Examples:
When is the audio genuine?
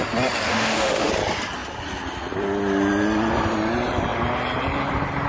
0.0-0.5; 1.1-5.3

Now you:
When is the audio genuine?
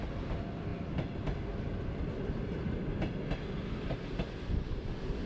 0.0-5.3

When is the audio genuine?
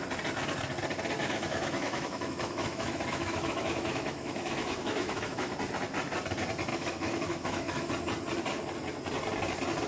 0.0-1.2; 5.5-6.7; 7.9-9.9